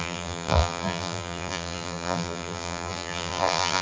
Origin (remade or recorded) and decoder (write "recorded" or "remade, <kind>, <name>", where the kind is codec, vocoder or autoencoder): remade, vocoder, BigVGAN v2